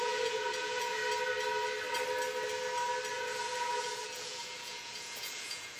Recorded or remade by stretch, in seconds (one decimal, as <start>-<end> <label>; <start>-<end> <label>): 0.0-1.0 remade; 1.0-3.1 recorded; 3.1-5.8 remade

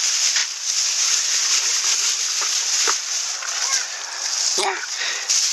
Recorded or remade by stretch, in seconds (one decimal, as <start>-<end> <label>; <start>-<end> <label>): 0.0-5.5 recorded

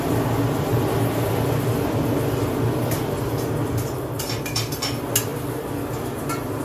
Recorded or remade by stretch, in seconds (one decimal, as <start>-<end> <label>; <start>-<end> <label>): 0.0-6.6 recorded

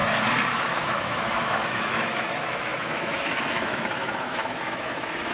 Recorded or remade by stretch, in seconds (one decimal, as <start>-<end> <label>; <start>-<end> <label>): 0.0-0.6 recorded; 0.6-5.3 remade

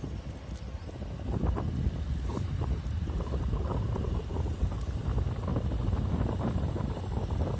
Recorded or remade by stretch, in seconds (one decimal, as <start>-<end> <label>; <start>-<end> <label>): 0.0-2.3 recorded; 2.3-4.3 remade; 4.3-7.6 recorded

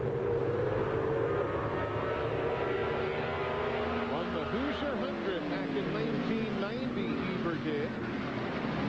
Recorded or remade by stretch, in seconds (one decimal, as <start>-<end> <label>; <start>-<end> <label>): 0.0-8.9 recorded